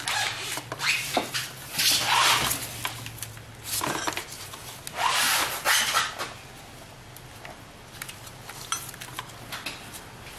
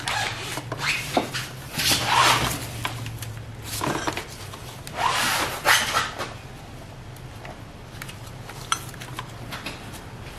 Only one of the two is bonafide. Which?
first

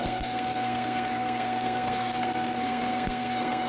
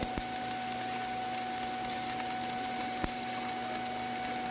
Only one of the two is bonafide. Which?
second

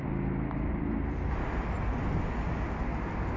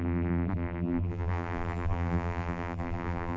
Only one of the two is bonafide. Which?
first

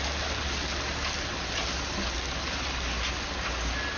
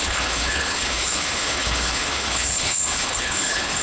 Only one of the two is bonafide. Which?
first